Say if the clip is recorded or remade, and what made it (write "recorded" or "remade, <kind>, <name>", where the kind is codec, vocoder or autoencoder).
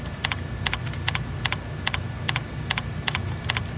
recorded